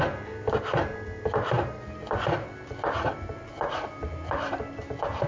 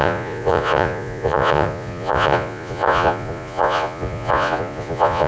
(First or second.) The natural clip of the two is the first